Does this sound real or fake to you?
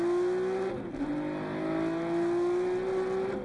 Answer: real